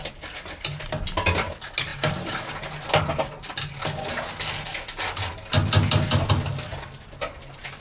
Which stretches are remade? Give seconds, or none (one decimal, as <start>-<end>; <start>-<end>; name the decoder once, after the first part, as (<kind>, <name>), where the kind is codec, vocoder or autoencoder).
none